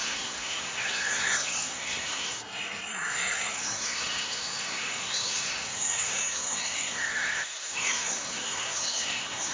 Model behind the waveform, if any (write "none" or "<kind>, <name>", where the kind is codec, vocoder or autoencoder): codec, SNAC